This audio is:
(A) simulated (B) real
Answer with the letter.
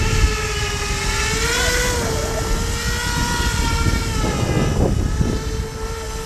B